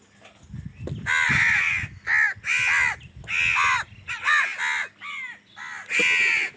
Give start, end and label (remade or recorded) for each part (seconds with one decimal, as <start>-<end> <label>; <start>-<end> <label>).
0.0-6.6 recorded